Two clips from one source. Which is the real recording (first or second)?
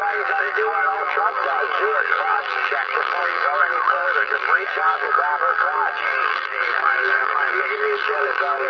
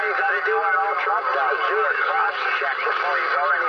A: second